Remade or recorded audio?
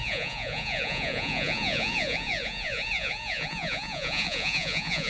remade